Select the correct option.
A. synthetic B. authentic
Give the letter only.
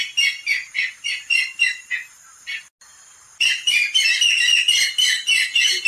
B